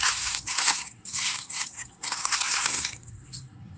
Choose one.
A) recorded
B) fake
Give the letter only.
B